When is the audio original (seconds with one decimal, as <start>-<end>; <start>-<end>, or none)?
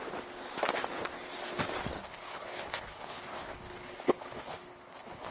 0.0-2.0